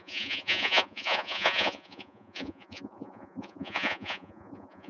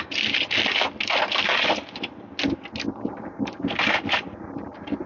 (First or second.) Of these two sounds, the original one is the second